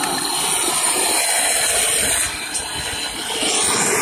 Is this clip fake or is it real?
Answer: real